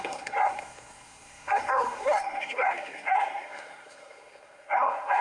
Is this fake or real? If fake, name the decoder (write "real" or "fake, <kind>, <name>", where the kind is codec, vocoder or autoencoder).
fake, codec, SNAC